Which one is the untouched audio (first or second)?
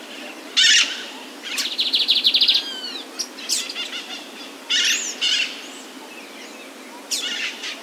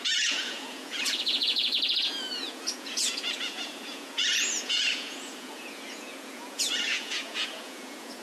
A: first